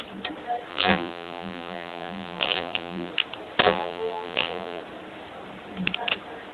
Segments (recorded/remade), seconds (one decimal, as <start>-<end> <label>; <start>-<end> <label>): 0.0-0.7 recorded; 0.7-3.1 remade; 3.1-3.6 recorded; 3.6-4.8 remade; 4.8-6.5 recorded